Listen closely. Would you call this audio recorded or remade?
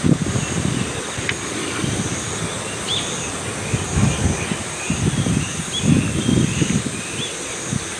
recorded